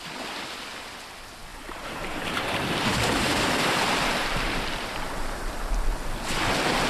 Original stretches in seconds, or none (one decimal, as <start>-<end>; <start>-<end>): 0.0-1.5; 5.5-6.9